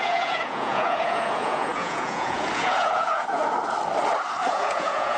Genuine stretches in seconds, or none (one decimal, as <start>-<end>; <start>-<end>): 3.4-4.5